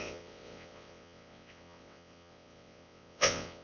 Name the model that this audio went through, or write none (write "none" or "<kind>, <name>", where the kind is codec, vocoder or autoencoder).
vocoder, WaveNeXt